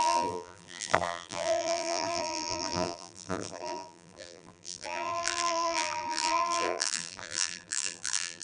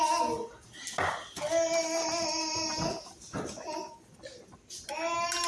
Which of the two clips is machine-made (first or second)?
first